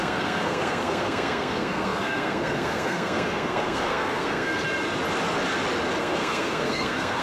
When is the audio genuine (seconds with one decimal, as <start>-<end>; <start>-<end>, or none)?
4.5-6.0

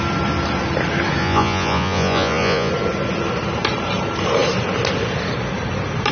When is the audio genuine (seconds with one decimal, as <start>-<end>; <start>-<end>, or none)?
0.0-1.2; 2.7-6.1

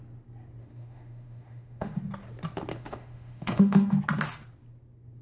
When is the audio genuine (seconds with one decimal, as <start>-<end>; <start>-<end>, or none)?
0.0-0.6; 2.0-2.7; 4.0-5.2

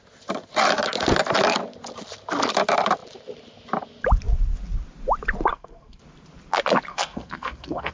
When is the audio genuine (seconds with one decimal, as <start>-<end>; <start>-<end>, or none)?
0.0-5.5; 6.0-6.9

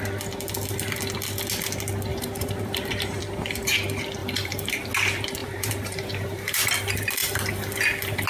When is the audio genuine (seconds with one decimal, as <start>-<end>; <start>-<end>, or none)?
0.0-2.1; 3.2-4.2; 4.9-5.4; 6.7-8.3